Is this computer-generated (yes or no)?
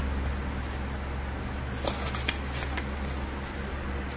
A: no